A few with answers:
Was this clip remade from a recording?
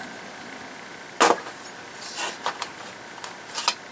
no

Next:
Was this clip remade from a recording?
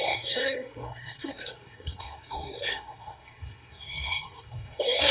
yes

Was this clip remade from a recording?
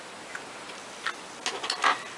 no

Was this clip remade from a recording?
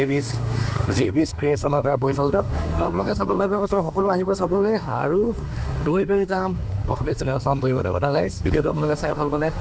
yes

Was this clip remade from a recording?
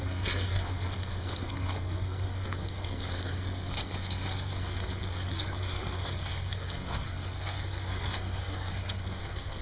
yes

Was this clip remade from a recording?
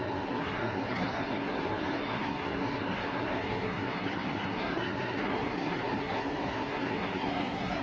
yes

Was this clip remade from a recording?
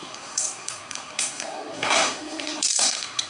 yes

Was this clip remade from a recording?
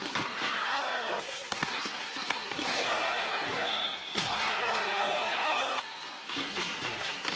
yes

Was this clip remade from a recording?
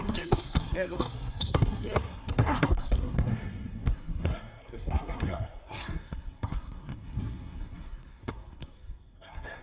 yes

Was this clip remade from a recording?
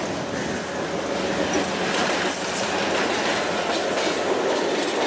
no